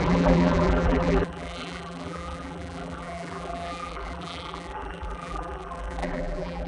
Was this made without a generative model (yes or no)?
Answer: no